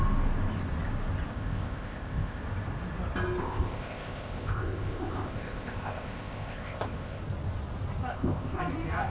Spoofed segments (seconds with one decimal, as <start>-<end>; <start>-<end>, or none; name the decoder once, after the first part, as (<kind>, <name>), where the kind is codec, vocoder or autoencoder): 1.3-2.4 (codec, ZipCodec); 3.4-7.2; 8.1-8.6